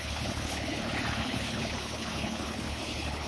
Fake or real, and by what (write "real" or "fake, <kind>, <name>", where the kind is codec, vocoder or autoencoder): fake, codec, HILCodec